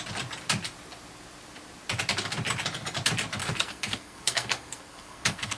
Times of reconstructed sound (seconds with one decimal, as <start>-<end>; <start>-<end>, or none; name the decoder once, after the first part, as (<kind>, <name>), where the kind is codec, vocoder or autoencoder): 3.4-5.6 (codec, SNAC)